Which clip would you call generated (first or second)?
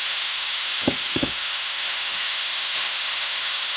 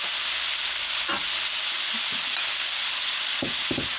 first